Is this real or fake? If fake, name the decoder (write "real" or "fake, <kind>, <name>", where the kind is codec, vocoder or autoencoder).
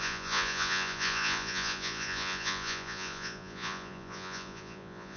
fake, vocoder, Vocos